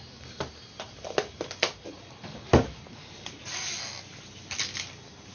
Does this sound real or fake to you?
real